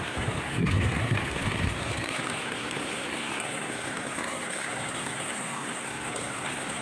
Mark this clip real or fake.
fake